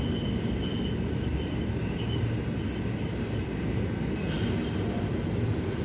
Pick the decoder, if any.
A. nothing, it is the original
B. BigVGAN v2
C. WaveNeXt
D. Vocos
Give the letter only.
A